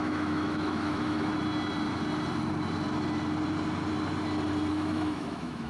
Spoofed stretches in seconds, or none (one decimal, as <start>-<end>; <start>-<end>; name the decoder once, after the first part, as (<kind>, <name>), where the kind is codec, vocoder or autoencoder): 0.0-1.3 (autoencoder, DAC-VAE); 4.7-5.7